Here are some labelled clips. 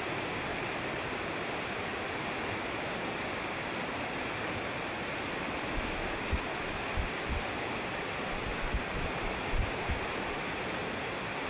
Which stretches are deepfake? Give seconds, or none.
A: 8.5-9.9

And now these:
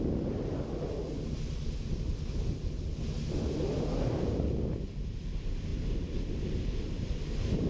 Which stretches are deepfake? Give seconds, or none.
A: none

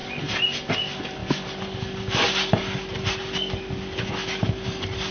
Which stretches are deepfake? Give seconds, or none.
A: none

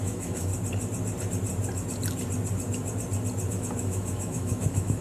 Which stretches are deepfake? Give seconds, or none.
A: 0.0-0.5; 3.5-5.0

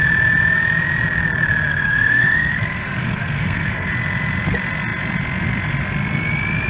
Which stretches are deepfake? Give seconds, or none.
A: 1.7-3.9

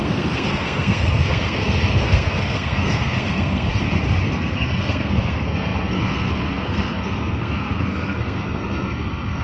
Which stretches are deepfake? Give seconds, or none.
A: 0.0-3.7; 4.2-9.4